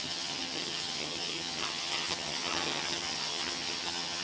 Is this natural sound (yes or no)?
no